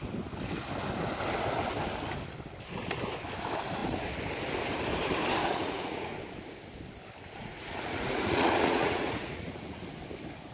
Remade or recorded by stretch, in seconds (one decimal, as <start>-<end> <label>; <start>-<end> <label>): 0.0-5.4 recorded; 5.4-6.2 remade; 6.2-7.4 recorded; 7.4-9.8 remade; 9.8-10.5 recorded